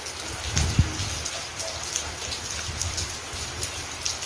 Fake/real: real